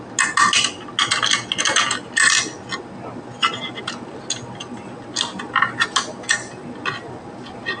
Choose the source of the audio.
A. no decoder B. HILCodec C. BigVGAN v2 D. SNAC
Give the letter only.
A